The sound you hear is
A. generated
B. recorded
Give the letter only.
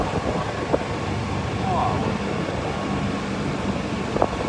B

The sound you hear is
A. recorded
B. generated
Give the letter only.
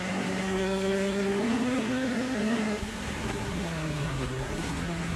B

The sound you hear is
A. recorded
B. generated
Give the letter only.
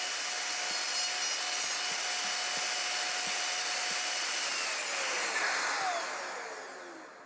A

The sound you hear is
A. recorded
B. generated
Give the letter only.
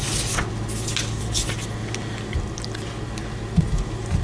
A